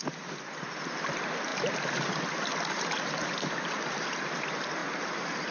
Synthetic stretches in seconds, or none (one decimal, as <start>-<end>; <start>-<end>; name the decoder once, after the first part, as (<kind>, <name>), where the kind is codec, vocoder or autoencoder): none